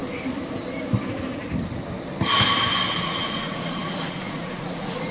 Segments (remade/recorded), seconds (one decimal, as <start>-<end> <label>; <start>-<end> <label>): 0.0-2.9 recorded; 2.9-5.1 remade

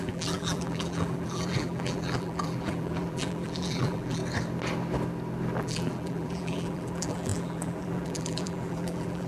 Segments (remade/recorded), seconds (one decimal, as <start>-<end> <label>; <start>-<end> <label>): 0.0-4.2 remade; 4.2-5.6 recorded; 5.6-9.3 remade

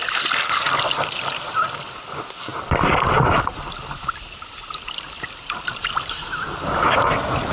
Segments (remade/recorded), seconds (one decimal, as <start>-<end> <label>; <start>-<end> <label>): 0.0-2.5 recorded; 2.5-5.9 remade; 5.9-7.5 recorded

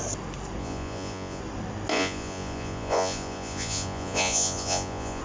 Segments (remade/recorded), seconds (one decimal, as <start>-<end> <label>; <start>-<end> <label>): 0.0-0.6 recorded; 0.6-1.4 remade; 1.4-1.9 recorded; 1.9-5.2 remade

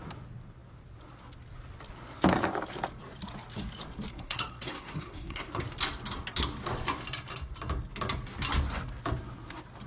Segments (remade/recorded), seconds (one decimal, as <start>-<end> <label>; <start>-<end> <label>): 0.0-4.1 recorded; 4.1-5.6 remade; 5.6-9.9 recorded